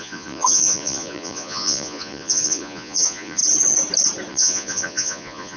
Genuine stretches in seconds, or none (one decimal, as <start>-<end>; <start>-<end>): 3.4-4.3